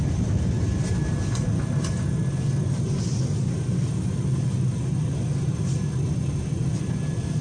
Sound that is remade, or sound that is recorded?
recorded